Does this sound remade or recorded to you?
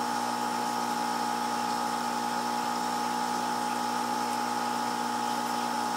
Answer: recorded